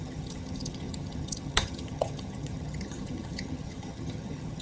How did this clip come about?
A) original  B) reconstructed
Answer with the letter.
B